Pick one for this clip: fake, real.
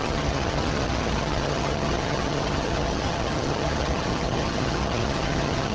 fake